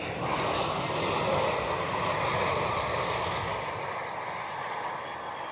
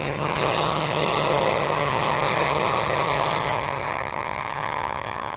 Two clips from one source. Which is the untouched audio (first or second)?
first